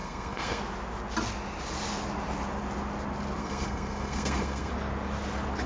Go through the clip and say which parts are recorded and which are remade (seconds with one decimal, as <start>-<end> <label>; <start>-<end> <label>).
0.0-0.6 remade; 0.6-3.4 recorded; 3.4-4.7 remade; 4.7-5.7 recorded